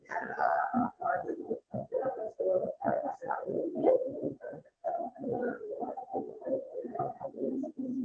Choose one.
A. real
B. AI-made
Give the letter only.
B